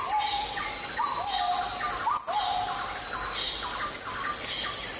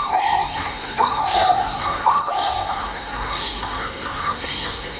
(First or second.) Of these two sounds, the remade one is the second